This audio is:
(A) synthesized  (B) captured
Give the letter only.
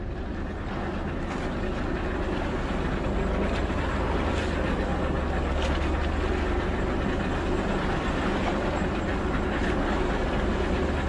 B